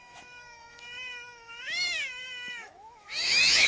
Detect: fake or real fake